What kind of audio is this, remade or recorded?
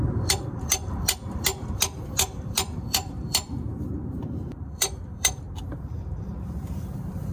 remade